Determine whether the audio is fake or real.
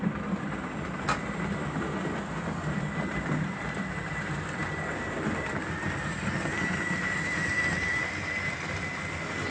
real